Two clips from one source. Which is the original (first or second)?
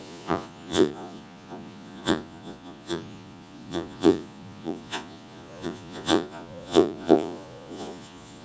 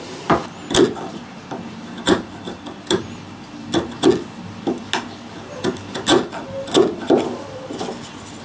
second